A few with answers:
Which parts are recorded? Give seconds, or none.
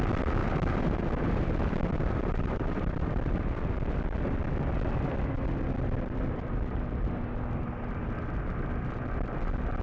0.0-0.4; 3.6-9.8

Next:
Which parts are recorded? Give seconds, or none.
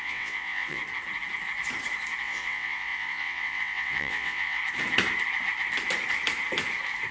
0.8-2.2; 4.6-7.1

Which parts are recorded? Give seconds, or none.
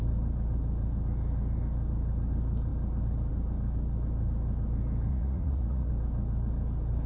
0.0-5.1; 5.9-7.1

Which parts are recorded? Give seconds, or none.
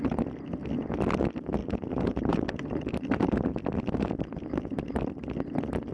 0.0-1.6; 4.1-5.9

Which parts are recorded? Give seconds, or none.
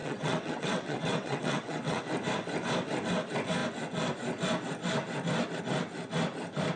2.0-6.8